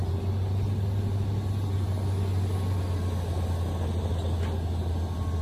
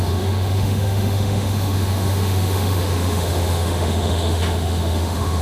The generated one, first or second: second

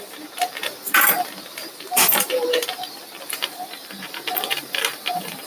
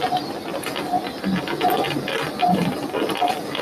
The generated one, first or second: first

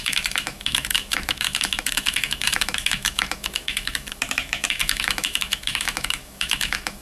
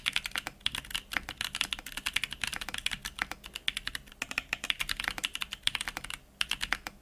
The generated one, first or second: first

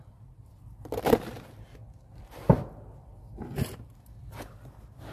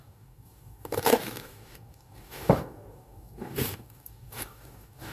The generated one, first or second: second